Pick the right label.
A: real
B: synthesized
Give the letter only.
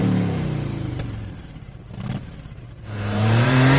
B